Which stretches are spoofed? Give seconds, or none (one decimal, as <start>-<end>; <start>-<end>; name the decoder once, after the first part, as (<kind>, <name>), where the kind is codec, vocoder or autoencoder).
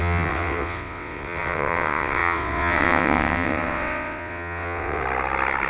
0.0-5.0 (vocoder, WaveNeXt)